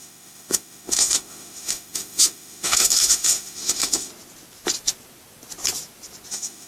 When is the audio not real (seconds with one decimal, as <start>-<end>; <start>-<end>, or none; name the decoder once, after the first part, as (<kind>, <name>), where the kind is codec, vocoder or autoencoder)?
0.0-4.1 (autoencoder, DAC-VAE); 6.3-6.7